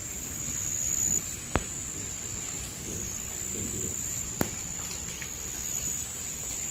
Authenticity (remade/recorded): remade